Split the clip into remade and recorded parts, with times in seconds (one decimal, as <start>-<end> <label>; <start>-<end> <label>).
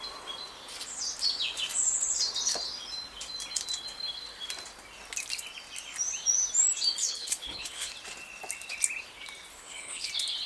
0.0-7.0 recorded; 7.0-7.9 remade; 7.9-9.5 recorded; 9.5-10.1 remade; 10.1-10.5 recorded